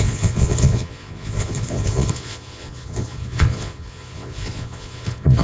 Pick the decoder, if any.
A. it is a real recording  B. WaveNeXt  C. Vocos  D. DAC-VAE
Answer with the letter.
C